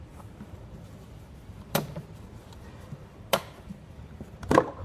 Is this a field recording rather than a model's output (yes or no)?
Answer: no